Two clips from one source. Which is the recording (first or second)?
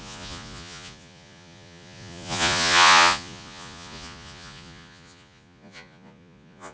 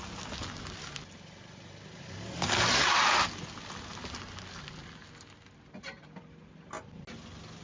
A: second